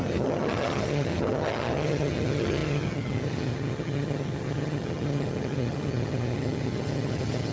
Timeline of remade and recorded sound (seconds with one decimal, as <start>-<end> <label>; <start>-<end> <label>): 0.0-7.5 remade